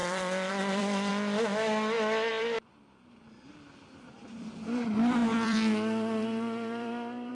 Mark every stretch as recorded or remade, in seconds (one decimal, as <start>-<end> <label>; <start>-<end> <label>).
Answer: 0.0-1.1 remade; 1.1-2.3 recorded; 2.3-7.3 remade